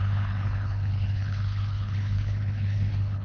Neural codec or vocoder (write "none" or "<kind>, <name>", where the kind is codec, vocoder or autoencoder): codec, HILCodec